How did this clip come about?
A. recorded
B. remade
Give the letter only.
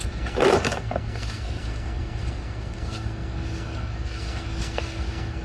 B